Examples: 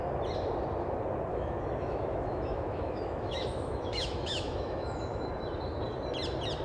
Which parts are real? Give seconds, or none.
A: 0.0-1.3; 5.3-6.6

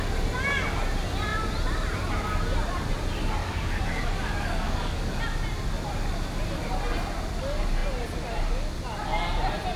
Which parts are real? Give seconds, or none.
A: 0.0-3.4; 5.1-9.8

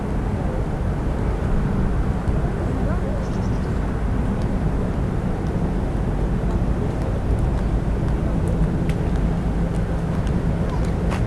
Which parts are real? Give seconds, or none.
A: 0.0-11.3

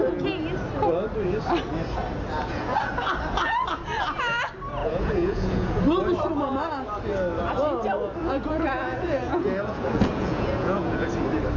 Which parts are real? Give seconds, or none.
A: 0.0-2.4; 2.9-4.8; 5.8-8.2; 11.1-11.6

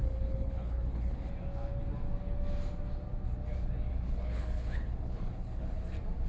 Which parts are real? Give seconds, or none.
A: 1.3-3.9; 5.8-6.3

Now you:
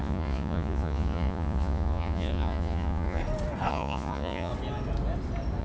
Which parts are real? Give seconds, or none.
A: 3.2-3.7; 4.5-5.6

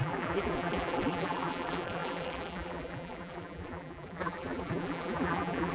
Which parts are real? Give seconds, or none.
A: none

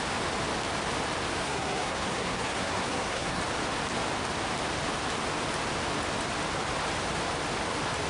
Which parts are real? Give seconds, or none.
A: 0.0-1.4; 3.4-8.1